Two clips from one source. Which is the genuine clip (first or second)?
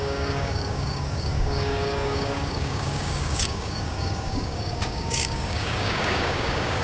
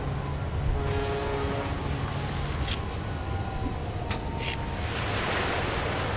second